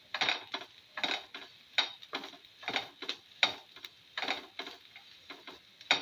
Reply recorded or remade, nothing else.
recorded